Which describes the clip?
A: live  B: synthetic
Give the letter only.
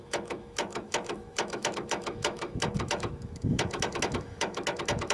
B